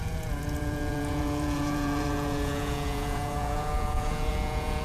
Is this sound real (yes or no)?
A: no